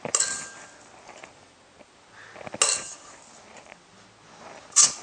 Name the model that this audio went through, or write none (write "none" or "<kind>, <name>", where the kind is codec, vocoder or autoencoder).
none